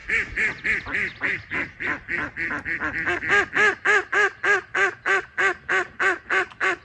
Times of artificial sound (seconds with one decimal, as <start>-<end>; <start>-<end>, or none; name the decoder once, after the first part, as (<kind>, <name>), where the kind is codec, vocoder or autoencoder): none